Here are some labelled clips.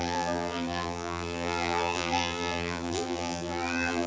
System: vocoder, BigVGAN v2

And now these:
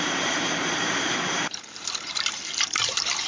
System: vocoder, BigVGAN v2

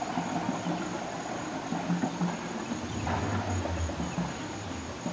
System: none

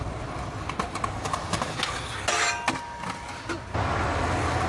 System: none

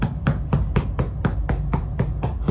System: none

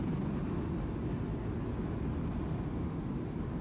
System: none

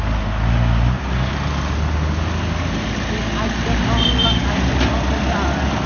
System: none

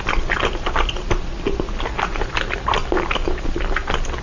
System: none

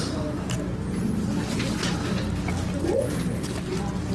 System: none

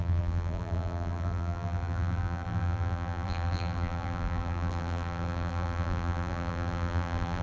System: vocoder, BigVGAN v2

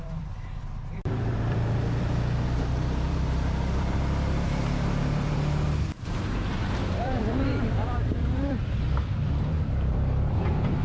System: vocoder, BigVGAN v2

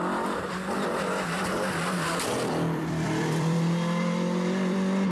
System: vocoder, BigVGAN v2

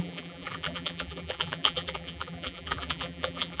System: vocoder, BigVGAN v2